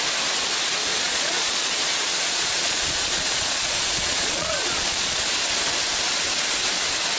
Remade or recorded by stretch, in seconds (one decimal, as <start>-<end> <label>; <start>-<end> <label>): 0.0-0.9 recorded; 0.9-5.2 remade; 5.2-7.2 recorded